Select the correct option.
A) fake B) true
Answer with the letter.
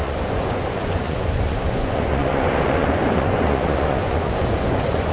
A